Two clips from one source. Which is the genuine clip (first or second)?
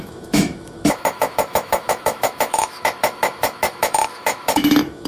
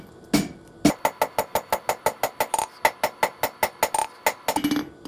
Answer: second